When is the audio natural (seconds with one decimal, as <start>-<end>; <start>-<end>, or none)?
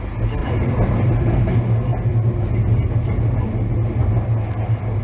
0.0-0.4; 1.4-5.0